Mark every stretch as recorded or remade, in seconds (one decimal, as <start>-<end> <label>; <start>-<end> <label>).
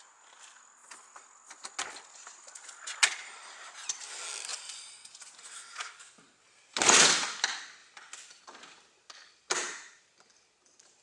0.0-9.6 recorded; 9.6-10.3 remade; 10.3-11.0 recorded